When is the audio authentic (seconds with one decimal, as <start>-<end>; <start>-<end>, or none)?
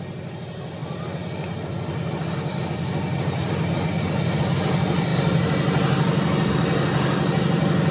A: 0.0-7.9